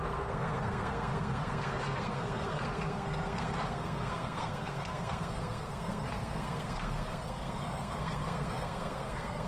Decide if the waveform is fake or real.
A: fake